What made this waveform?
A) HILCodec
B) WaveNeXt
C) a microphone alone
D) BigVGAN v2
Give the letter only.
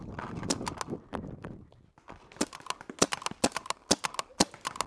C